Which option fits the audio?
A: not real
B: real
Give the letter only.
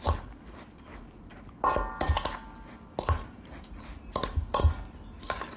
B